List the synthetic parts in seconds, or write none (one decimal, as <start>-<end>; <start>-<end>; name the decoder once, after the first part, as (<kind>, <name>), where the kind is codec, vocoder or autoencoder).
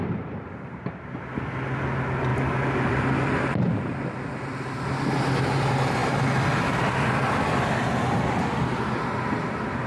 none